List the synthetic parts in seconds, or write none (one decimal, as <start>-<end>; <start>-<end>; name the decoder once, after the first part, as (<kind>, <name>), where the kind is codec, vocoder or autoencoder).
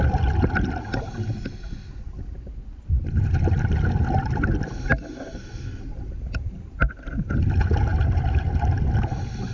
none